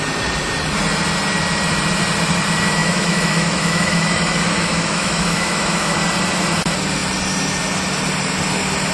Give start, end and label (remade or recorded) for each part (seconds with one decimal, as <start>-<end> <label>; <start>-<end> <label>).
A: 0.0-2.8 recorded; 2.8-6.0 remade; 6.0-8.9 recorded